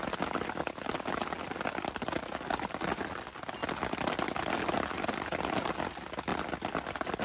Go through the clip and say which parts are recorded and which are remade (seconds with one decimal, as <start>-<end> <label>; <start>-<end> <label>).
0.0-7.2 recorded